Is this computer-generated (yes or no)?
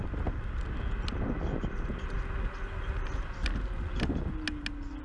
no